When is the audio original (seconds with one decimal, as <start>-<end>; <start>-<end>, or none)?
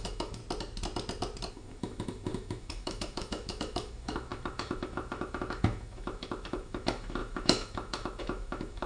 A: 0.4-1.5